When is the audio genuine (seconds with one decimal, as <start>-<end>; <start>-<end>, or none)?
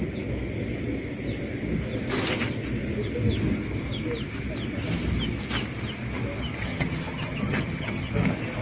0.0-6.7; 8.1-8.6